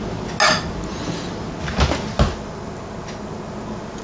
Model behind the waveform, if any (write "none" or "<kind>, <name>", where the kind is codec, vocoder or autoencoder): none